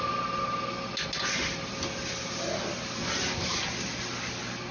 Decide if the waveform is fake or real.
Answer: real